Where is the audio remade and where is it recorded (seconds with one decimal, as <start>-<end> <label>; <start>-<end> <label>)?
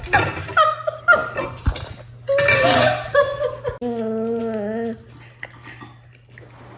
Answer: 0.0-6.8 recorded